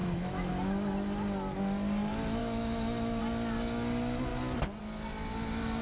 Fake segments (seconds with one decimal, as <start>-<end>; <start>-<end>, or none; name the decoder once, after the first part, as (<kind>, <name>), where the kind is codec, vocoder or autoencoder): 0.0-0.5 (autoencoder, DAC-VAE); 2.4-3.2